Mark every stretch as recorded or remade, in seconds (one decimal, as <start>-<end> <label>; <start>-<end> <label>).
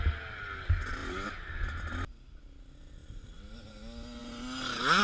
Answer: 0.0-3.0 recorded; 3.0-3.7 remade; 3.7-5.0 recorded